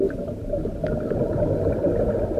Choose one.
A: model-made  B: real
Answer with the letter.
B